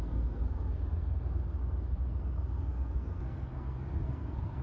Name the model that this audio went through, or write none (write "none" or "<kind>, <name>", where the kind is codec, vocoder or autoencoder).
codec, SNAC